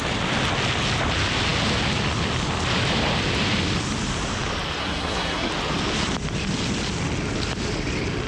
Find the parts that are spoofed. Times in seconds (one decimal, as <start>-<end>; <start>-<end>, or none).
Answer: 4.8-5.5